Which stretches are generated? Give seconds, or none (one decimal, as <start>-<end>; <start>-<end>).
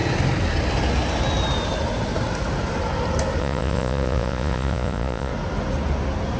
3.4-5.3